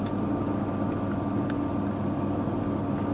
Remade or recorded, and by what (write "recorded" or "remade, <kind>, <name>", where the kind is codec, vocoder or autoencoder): recorded